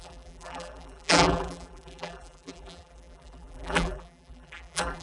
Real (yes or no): no